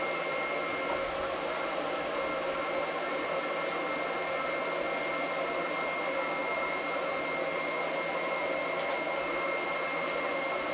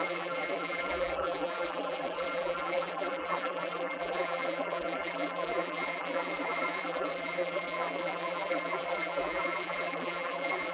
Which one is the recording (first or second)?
first